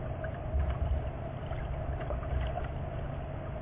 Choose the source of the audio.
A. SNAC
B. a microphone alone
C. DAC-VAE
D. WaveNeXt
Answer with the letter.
B